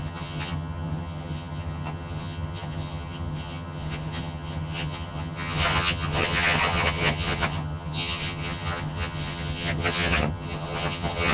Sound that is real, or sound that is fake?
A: fake